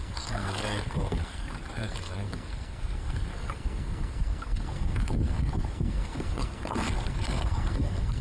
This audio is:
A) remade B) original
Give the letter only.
A